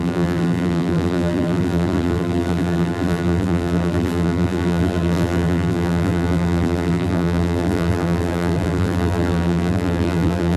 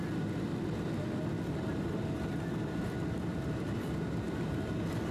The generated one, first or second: first